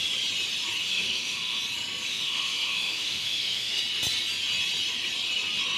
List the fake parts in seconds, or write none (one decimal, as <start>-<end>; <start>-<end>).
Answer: 0.8-1.6; 2.1-3.8